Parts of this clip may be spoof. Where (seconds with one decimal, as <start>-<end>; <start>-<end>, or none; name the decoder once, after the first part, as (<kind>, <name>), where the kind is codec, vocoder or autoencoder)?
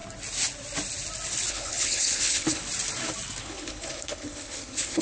1.5-2.6 (codec, HILCodec); 3.4-5.0